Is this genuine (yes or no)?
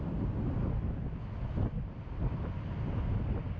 yes